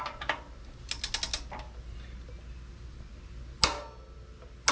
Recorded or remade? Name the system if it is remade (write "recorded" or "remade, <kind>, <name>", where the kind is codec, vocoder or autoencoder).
recorded